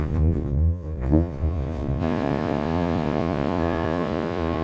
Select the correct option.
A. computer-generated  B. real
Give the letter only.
A